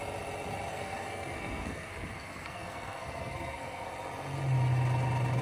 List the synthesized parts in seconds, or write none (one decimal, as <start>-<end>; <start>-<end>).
0.7-3.9